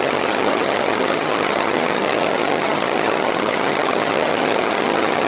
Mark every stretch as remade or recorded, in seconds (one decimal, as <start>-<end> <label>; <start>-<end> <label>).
0.0-5.3 remade

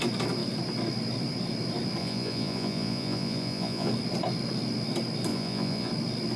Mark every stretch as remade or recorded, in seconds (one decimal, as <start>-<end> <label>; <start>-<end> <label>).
0.0-2.0 recorded; 2.0-3.9 remade; 3.9-5.3 recorded; 5.3-5.9 remade; 5.9-6.4 recorded

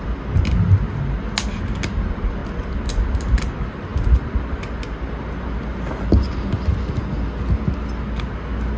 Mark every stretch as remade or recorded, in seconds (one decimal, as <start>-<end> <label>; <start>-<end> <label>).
0.0-8.8 recorded